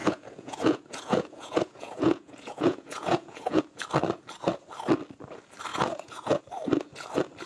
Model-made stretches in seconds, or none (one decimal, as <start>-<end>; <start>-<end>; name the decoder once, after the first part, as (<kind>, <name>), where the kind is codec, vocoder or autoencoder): 0.0-3.6 (vocoder, Vocos); 5.7-6.4